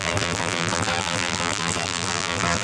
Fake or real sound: fake